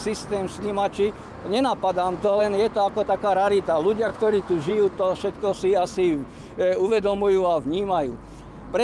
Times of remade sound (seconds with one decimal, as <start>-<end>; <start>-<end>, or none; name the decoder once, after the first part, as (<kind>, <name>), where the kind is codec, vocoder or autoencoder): 1.4-2.4 (autoencoder, DAC-VAE); 4.1-4.7; 6.4-7.6